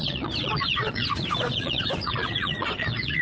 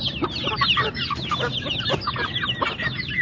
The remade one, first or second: first